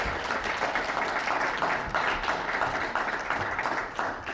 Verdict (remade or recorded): recorded